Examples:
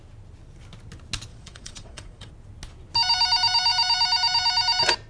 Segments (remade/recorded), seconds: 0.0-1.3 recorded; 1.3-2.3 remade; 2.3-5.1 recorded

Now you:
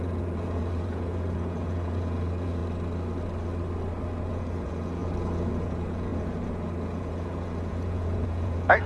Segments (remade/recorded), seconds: 0.0-2.6 remade; 2.6-4.3 recorded; 4.3-8.9 remade

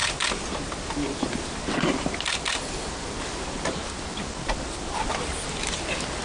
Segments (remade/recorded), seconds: 0.0-6.2 recorded

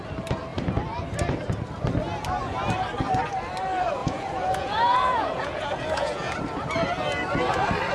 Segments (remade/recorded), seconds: 0.0-4.0 recorded; 4.0-6.3 remade; 6.3-7.9 recorded